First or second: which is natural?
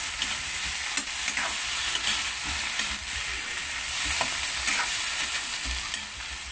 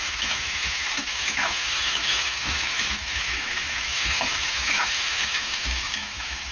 first